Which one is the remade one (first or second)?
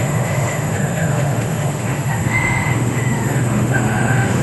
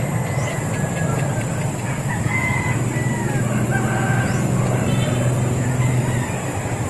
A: first